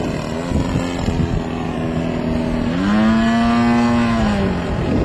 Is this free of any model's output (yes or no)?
yes